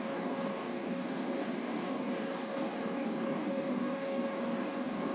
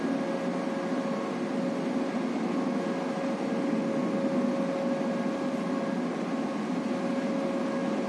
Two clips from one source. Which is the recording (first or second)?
second